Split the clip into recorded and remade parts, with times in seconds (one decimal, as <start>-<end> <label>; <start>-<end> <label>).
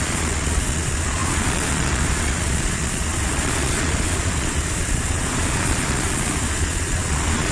0.0-7.5 remade